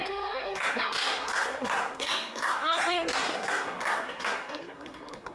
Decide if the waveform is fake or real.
fake